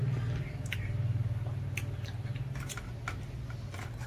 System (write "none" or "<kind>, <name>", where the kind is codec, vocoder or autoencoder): none